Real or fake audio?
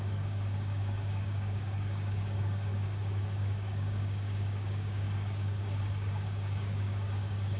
fake